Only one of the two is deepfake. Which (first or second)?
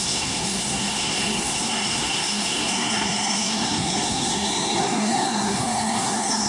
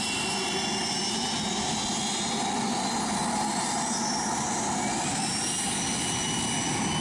first